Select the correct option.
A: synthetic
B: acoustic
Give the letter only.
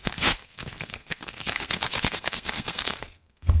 A